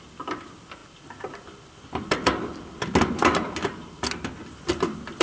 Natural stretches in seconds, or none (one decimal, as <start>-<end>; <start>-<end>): 0.0-5.2